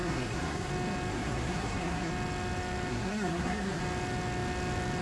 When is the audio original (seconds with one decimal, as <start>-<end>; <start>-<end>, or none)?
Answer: 0.7-1.1; 2.1-2.9; 3.8-5.0